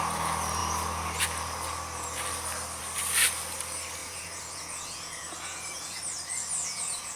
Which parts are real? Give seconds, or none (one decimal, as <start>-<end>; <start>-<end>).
0.0-4.0; 6.0-6.6